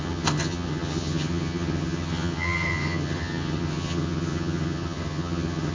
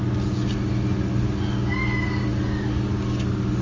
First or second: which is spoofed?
first